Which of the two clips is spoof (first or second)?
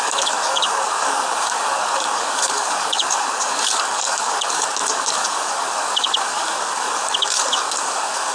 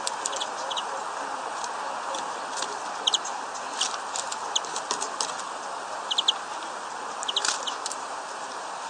first